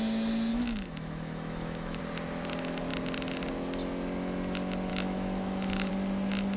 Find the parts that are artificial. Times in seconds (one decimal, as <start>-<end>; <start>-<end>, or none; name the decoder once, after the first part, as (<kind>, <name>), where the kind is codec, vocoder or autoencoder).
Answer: 0.5-2.0 (autoencoder, DAC-VAE); 4.9-5.9